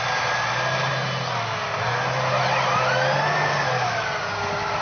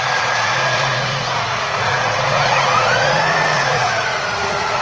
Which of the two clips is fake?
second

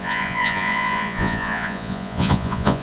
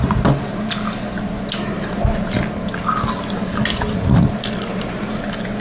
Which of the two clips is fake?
first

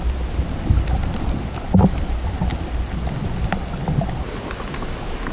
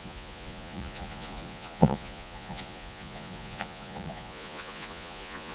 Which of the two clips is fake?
second